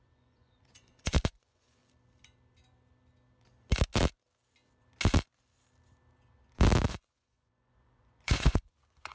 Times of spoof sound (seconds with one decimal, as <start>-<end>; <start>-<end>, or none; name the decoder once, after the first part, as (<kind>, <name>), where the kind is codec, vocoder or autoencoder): 0.0-1.8 (vocoder, Vocos); 6.9-9.1